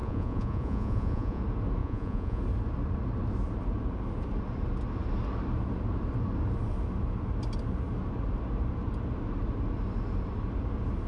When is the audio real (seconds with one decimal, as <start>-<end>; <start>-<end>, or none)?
1.4-1.8; 2.4-11.1